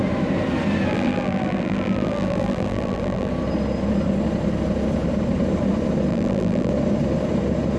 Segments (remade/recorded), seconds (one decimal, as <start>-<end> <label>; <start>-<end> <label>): 0.0-0.9 recorded; 0.9-3.3 remade; 3.3-6.1 recorded; 6.1-6.7 remade; 6.7-7.8 recorded